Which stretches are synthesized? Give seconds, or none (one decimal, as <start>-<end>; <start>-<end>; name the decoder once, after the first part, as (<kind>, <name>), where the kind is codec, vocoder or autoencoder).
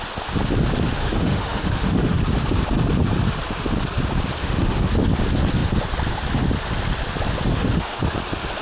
1.0-2.2 (autoencoder, DAC-VAE); 4.4-4.9; 7.5-8.0